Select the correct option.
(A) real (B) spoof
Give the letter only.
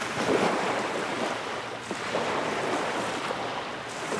A